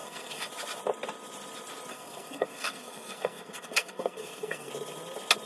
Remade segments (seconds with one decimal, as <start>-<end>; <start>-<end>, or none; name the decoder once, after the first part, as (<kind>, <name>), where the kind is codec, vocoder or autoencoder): 0.0-0.5 (codec, SNAC); 1.9-4.7